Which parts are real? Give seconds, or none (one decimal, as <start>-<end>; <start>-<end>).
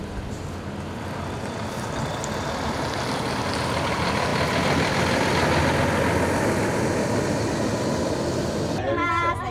0.0-9.5